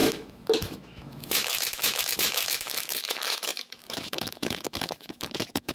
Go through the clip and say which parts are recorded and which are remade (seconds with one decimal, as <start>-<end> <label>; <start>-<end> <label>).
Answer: 0.0-5.7 remade